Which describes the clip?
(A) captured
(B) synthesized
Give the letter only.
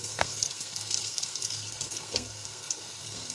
B